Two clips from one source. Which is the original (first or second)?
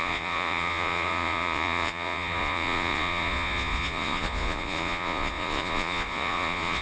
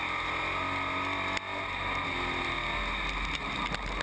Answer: second